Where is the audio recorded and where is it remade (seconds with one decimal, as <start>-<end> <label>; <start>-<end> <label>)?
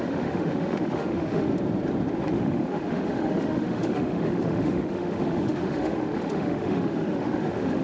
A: 0.0-1.5 remade; 1.5-2.3 recorded; 2.3-7.8 remade